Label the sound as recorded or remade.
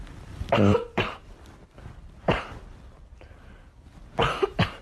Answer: remade